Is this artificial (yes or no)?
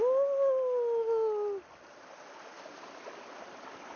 no